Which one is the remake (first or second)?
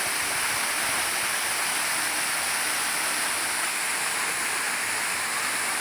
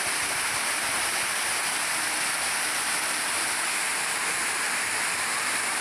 second